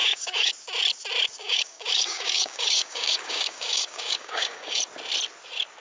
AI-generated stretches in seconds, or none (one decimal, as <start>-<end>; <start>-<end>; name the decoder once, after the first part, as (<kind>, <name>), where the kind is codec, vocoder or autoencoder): 0.0-0.5 (codec, DAC); 1.4-4.8